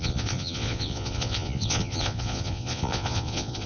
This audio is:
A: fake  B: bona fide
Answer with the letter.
A